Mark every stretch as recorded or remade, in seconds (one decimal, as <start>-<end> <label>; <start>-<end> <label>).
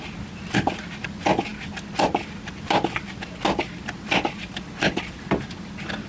0.0-6.1 recorded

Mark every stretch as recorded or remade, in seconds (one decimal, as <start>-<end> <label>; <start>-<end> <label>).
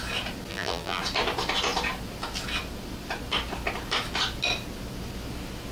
0.0-0.5 recorded; 0.5-1.0 remade; 1.0-5.7 recorded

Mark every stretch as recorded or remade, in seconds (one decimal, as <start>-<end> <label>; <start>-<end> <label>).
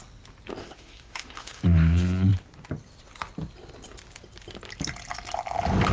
0.0-0.6 recorded; 0.6-1.6 remade; 1.6-5.9 recorded